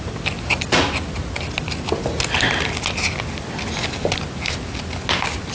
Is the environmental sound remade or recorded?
recorded